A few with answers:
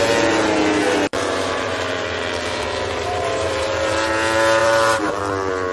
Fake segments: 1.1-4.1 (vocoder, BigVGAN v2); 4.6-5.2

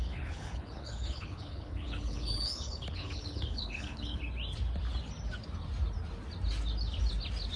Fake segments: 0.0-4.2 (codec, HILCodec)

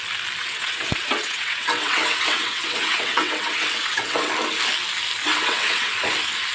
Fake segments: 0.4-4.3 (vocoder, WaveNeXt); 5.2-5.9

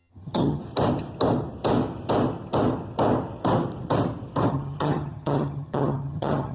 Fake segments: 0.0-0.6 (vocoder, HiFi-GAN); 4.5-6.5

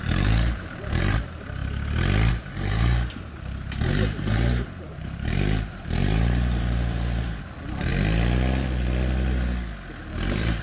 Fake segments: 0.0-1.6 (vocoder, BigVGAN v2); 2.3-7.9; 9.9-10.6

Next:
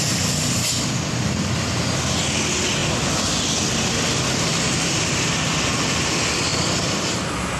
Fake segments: 0.0-2.8 (vocoder, BigVGAN v2); 5.9-6.5

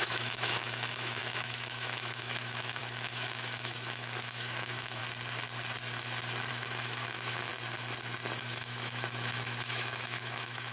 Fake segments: 0.0-5.0 (autoencoder, DAC-VAE); 6.5-7.5; 8.4-10.7

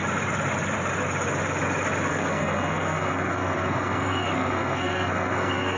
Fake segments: 2.1-5.8 (codec, SNAC)